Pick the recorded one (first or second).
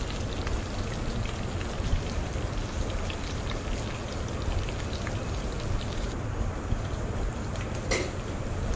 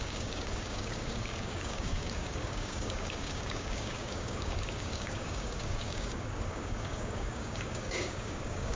first